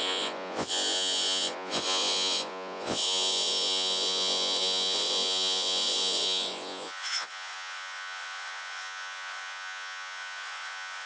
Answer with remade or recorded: remade